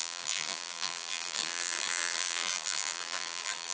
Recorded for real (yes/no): no